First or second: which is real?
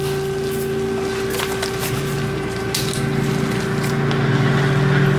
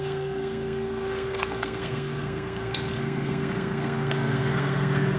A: first